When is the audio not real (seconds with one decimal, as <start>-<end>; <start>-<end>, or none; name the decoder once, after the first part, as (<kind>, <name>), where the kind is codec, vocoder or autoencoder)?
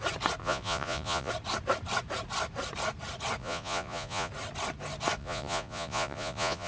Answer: 0.4-1.3 (vocoder, Vocos); 3.4-4.3; 5.2-6.7